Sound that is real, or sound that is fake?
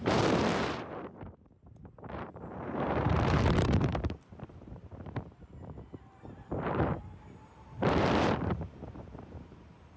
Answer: fake